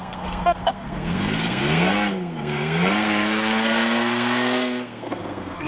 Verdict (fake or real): fake